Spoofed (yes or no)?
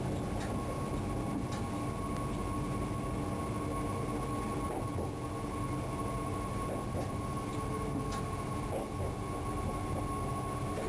no